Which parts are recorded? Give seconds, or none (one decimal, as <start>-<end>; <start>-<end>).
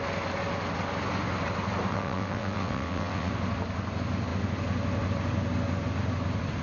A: 0.0-1.9; 3.3-6.6